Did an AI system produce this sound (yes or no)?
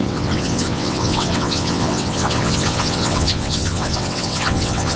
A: yes